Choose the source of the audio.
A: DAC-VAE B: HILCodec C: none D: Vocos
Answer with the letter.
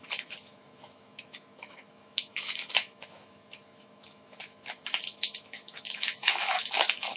A